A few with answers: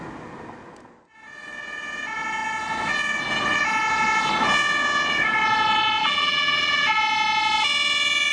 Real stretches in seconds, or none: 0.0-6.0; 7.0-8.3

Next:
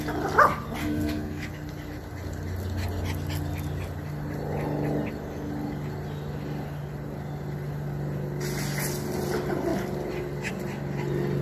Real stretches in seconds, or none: 0.0-0.8; 1.5-11.4

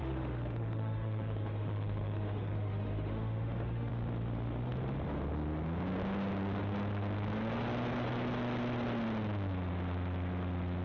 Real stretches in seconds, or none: 3.9-10.8

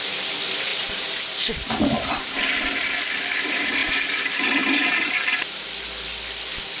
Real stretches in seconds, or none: 0.0-0.7; 3.0-3.8; 5.1-6.8

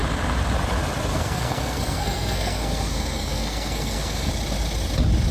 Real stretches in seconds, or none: 0.0-1.1; 4.3-5.3

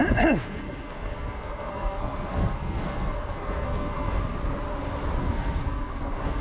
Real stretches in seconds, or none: 0.0-0.4; 4.2-5.2

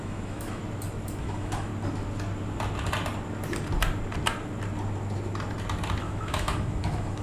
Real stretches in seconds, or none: 0.6-1.2; 1.7-6.0

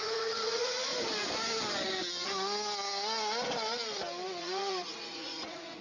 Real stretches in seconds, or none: 0.9-4.4